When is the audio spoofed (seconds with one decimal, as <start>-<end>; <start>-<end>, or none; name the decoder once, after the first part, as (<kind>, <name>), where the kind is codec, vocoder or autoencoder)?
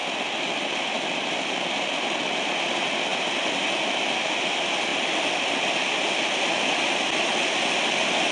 none